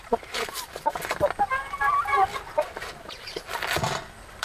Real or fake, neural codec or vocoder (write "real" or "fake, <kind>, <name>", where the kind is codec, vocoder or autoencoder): fake, vocoder, BigVGAN v2